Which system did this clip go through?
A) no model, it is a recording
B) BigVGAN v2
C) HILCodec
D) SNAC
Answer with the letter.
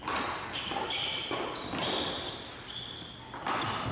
A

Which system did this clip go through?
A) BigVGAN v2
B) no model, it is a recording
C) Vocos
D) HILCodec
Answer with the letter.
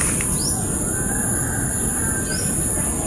B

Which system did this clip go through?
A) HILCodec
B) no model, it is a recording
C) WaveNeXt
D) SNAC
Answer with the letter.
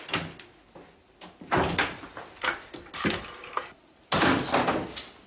B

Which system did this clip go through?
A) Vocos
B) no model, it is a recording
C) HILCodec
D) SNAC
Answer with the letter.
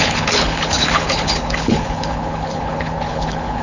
C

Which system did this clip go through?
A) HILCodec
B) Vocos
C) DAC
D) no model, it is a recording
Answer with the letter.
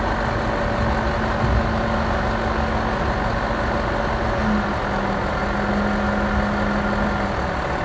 D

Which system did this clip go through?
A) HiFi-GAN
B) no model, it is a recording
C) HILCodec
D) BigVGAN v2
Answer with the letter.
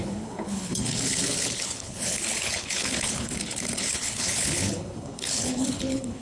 C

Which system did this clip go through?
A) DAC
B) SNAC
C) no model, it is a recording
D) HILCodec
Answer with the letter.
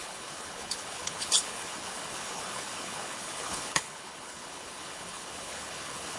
D